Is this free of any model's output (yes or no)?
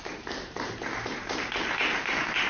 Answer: no